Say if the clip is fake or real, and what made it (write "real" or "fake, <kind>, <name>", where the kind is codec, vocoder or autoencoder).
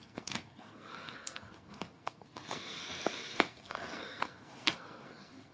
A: fake, codec, SNAC